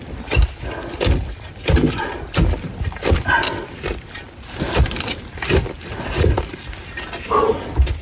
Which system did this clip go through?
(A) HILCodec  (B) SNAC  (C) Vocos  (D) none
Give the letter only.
D